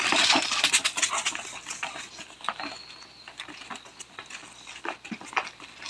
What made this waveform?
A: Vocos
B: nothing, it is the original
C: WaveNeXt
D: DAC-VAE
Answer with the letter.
B